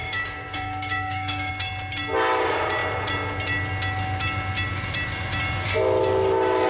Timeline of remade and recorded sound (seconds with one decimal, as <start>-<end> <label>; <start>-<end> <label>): 0.0-1.5 remade; 1.5-6.7 recorded